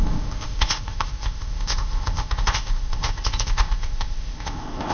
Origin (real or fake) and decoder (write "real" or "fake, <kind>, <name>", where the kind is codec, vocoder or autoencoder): fake, codec, ZipCodec